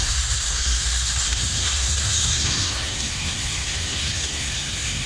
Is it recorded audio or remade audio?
remade